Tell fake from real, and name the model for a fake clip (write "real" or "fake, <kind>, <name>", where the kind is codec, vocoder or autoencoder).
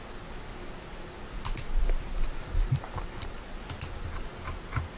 real